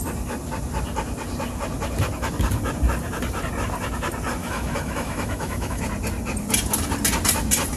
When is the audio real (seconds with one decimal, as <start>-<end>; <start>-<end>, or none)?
0.0-4.4; 5.8-7.8